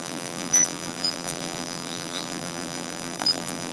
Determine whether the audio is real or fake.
fake